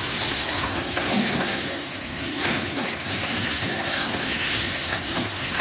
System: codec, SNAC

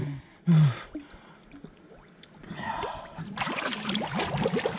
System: none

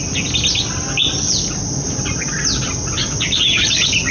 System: none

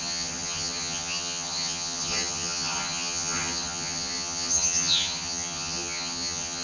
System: vocoder, HiFi-GAN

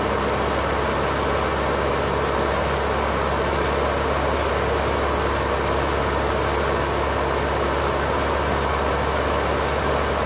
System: none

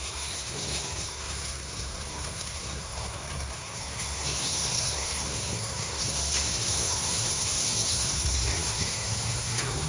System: codec, SNAC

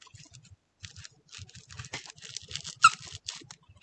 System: none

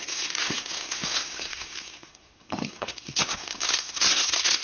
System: codec, SNAC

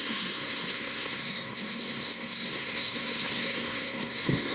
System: codec, SNAC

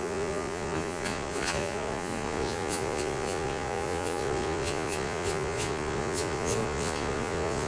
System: vocoder, Vocos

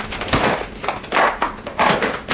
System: vocoder, BigVGAN v2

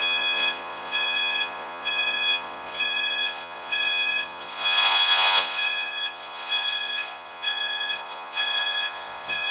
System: vocoder, Vocos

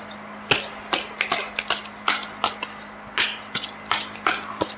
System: none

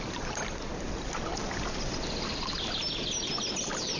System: none